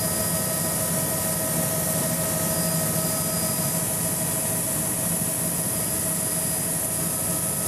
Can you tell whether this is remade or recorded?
recorded